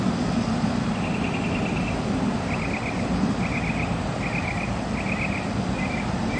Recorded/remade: recorded